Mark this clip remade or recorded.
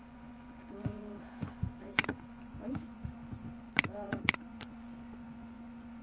remade